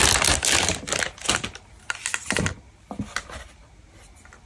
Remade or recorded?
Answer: recorded